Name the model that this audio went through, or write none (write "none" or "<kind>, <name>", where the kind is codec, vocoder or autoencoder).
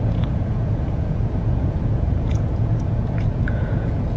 vocoder, Vocos